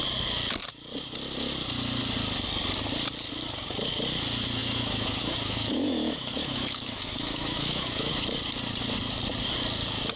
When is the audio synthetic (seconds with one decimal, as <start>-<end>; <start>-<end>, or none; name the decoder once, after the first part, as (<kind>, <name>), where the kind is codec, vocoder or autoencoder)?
4.6-8.1 (autoencoder, DAC-VAE)